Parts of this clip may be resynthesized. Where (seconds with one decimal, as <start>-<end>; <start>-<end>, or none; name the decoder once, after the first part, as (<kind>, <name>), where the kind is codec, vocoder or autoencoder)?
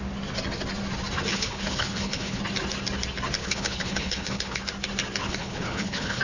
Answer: 1.3-2.4 (codec, HILCodec); 3.4-4.6; 5.2-6.2